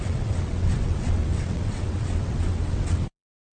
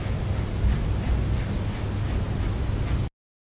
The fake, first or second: first